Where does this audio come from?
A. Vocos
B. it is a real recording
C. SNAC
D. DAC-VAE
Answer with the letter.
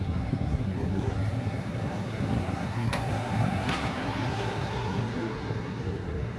C